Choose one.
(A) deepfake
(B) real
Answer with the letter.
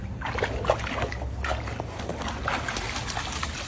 B